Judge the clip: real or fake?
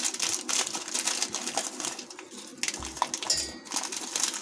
real